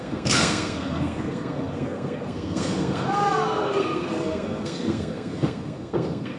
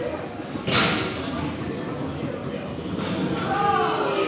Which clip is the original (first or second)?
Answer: second